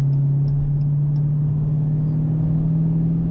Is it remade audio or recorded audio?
recorded